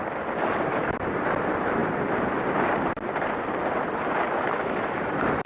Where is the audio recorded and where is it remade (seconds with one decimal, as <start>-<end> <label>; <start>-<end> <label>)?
0.0-5.5 recorded